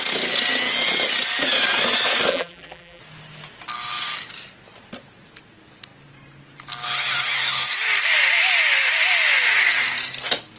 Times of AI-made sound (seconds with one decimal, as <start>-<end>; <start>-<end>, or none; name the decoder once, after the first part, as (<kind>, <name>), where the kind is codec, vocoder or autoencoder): 2.3-3.0 (vocoder, BigVGAN v2)